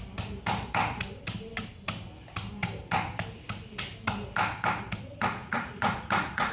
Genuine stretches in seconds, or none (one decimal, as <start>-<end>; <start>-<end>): 0.0-5.4